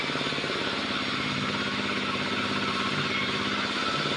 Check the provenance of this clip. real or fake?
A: real